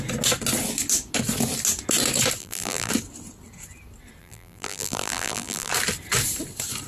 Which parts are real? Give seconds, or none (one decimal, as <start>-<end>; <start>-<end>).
0.0-2.4; 2.9-4.2; 5.7-6.9